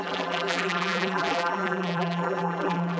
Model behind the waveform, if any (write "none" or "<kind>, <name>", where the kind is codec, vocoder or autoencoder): vocoder, BigVGAN v2